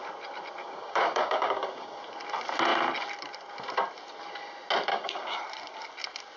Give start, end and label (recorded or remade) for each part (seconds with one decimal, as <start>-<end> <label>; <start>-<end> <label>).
0.0-0.6 recorded; 0.6-2.0 remade; 2.0-4.9 recorded; 4.9-5.4 remade; 5.4-6.4 recorded

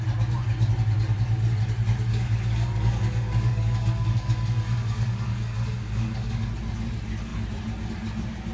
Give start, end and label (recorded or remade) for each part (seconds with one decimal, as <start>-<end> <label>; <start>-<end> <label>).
0.0-2.1 recorded; 2.1-6.5 remade; 6.5-8.5 recorded